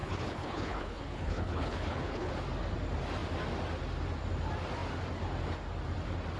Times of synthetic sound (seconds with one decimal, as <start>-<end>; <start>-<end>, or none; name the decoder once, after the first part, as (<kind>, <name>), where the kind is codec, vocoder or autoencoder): 0.0-2.3 (codec, HILCodec)